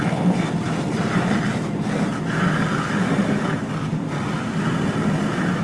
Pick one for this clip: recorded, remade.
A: recorded